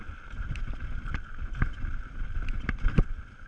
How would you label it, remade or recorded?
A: recorded